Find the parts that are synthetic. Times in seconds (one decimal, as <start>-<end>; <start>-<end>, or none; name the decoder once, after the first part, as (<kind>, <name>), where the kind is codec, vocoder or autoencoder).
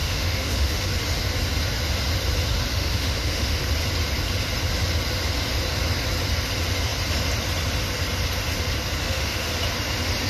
0.0-0.9 (autoencoder, DAC-VAE); 2.7-3.6; 9.0-9.5